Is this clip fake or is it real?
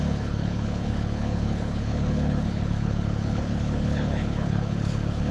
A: fake